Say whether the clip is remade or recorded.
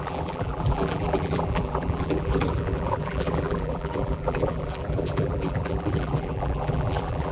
remade